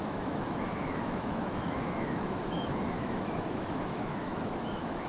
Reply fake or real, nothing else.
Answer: fake